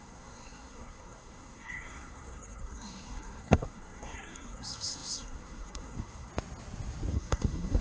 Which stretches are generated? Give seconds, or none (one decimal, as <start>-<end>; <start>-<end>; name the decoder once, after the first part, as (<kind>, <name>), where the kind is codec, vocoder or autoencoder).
0.0-6.3 (codec, SNAC); 7.1-7.8